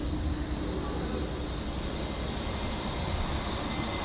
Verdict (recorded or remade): recorded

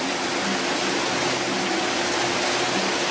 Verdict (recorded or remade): recorded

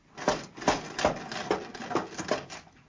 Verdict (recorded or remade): recorded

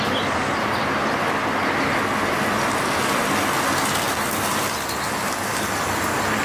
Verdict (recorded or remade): recorded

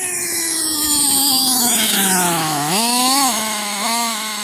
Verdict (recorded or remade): remade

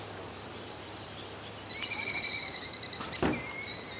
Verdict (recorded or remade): remade